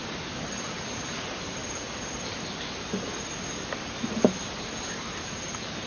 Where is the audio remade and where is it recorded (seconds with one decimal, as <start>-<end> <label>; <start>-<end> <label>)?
0.0-1.6 remade; 1.6-4.9 recorded; 4.9-5.9 remade